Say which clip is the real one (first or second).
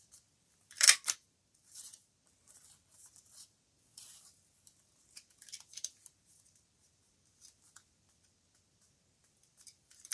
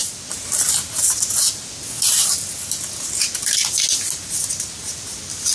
second